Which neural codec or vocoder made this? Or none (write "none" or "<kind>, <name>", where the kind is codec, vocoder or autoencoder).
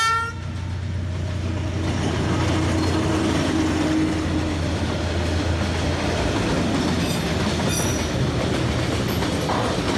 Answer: none